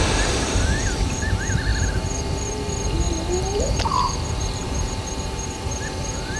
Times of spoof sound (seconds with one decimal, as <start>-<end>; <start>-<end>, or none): 0.0-1.7; 3.6-6.4